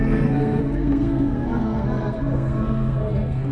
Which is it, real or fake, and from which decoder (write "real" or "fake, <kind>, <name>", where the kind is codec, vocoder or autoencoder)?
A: fake, codec, SNAC